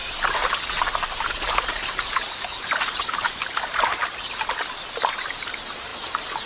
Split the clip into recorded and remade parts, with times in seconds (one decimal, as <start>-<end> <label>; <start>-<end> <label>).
0.0-0.8 recorded; 0.8-4.0 remade; 4.0-5.3 recorded; 5.3-5.9 remade; 5.9-6.5 recorded